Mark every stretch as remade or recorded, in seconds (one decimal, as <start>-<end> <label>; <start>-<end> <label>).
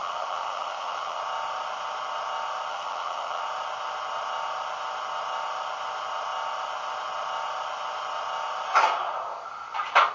0.0-1.2 remade; 1.2-2.7 recorded; 2.7-3.4 remade; 3.4-10.1 recorded